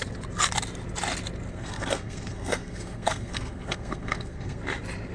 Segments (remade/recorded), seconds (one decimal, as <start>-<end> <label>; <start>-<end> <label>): 0.0-1.5 recorded; 1.5-4.6 remade; 4.6-5.1 recorded